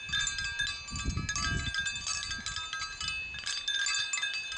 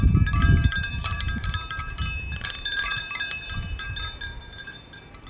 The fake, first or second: second